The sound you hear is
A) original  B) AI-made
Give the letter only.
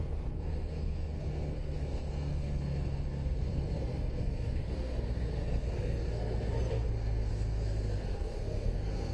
B